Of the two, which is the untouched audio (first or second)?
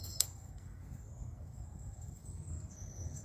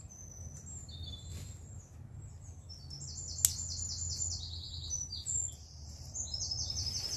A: second